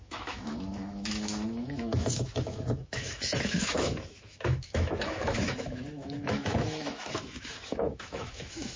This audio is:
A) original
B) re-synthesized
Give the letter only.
B